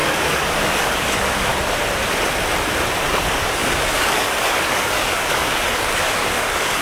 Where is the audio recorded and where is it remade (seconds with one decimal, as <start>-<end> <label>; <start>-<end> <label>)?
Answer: 0.0-1.5 remade; 1.5-3.1 recorded; 3.1-6.8 remade